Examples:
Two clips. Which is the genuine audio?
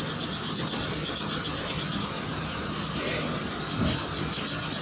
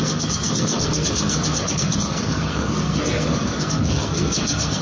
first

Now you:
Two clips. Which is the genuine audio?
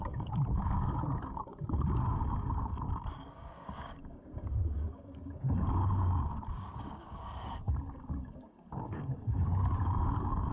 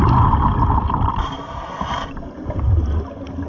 second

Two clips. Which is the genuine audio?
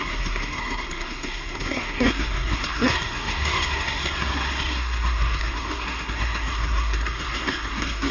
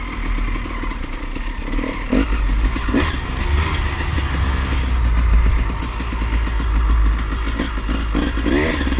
second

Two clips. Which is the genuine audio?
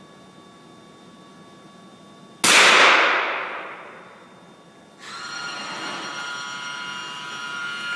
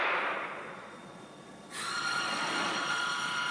first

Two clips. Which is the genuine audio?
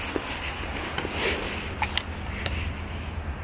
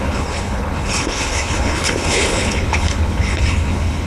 first